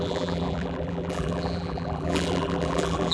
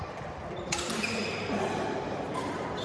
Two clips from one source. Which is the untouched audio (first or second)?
second